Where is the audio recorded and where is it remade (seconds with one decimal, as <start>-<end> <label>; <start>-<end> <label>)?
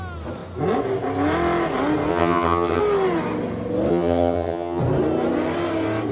0.0-2.1 recorded; 2.1-2.8 remade; 2.8-3.9 recorded; 3.9-4.8 remade; 4.8-6.1 recorded